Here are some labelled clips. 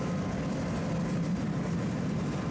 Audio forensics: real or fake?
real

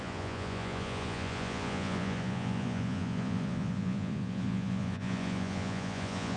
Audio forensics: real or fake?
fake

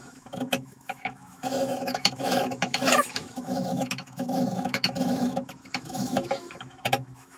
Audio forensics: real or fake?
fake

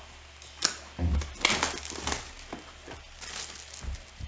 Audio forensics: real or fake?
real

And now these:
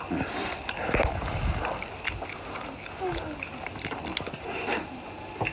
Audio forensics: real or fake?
real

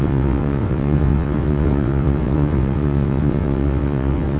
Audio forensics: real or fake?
fake